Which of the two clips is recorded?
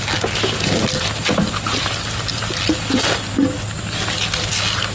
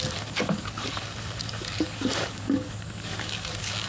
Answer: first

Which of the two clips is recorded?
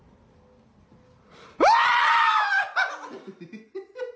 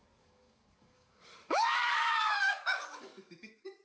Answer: first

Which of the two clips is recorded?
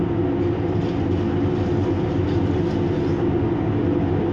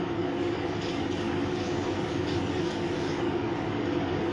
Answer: first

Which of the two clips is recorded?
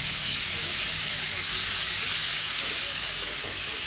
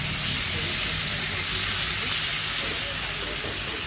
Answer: second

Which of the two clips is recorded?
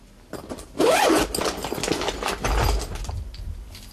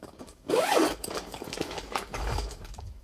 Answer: first